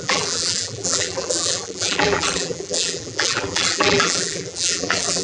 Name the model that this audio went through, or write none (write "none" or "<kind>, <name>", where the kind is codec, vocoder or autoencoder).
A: vocoder, BigVGAN v2